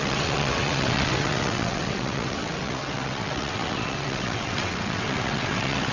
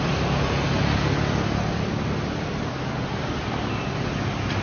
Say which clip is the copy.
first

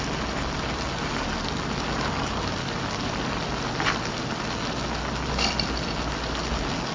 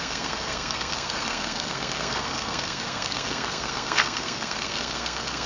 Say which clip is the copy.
second